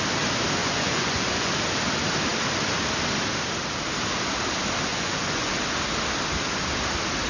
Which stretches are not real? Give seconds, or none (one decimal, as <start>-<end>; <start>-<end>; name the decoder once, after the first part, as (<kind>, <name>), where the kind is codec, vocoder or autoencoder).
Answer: 0.6-1.5 (vocoder, Vocos); 4.9-5.5